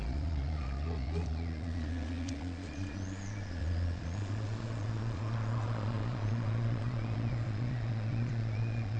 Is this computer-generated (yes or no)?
yes